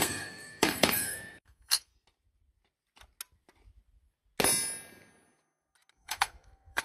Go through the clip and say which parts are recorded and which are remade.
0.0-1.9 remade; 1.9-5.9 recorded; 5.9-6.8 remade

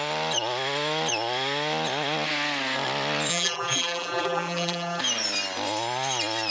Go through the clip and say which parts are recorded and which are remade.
0.0-3.3 recorded; 3.3-5.0 remade; 5.0-6.5 recorded